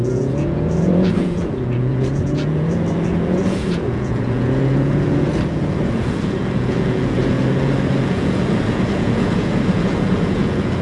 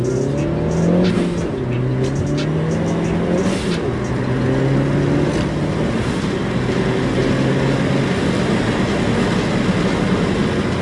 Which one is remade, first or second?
first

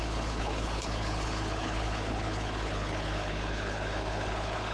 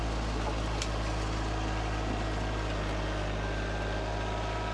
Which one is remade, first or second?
first